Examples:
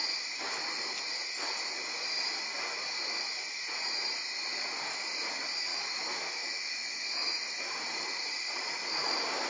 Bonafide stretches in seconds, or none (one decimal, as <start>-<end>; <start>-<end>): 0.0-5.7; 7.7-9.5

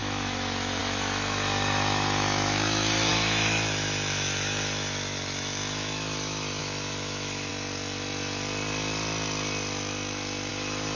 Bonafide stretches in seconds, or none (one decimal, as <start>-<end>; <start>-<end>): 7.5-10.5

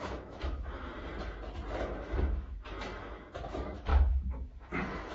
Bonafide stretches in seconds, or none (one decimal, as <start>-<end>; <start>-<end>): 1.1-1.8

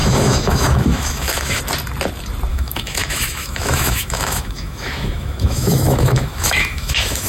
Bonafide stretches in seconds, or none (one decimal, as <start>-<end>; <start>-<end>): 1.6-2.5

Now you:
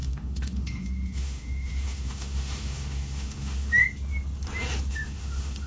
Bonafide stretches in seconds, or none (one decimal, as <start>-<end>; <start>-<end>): 3.8-4.9

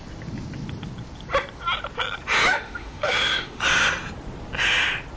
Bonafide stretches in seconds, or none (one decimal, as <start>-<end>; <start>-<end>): 0.0-2.5; 3.6-5.2